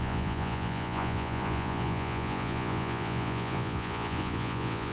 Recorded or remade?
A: remade